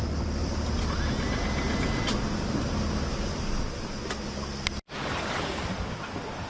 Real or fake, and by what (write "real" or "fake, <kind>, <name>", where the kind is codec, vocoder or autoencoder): real